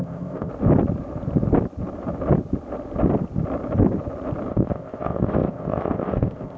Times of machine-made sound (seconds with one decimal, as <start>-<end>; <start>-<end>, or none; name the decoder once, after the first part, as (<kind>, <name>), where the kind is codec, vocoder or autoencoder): 0.0-0.5 (codec, ZipCodec); 4.5-6.6